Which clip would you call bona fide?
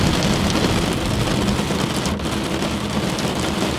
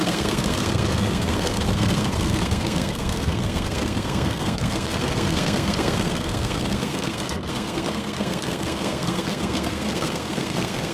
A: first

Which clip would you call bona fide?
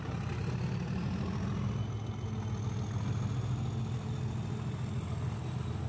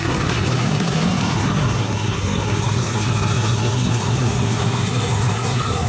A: first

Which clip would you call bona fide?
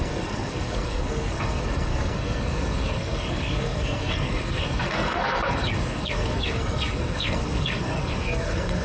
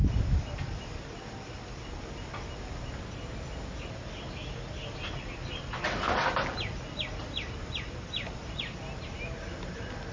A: second